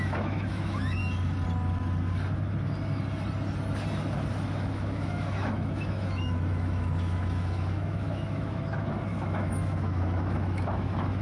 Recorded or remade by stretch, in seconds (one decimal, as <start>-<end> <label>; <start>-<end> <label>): 0.0-1.0 remade; 1.0-4.6 recorded; 4.6-11.2 remade